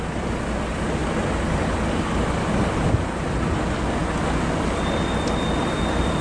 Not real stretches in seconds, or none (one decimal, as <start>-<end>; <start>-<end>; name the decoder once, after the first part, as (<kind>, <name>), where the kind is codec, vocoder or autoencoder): none